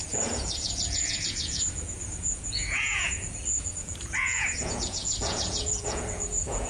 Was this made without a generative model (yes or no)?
no